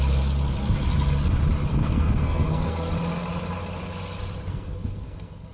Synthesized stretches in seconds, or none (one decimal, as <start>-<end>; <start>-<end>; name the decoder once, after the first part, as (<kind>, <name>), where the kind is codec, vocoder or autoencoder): 1.7-2.9 (codec, SNAC); 4.5-5.5